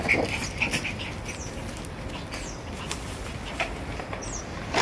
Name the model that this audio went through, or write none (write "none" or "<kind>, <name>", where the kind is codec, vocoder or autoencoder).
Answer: none